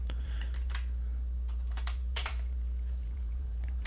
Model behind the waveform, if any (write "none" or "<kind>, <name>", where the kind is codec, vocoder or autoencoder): vocoder, BigVGAN v2